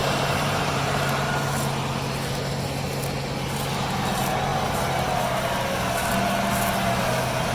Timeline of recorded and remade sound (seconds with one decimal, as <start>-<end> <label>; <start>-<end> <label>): 0.0-1.3 remade; 1.3-7.5 recorded